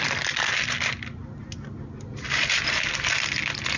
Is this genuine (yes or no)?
yes